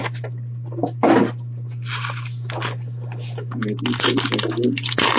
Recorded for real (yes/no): yes